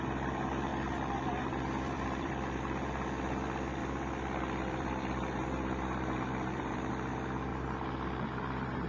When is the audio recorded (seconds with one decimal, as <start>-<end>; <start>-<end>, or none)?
0.0-0.7; 2.6-3.8; 6.9-7.5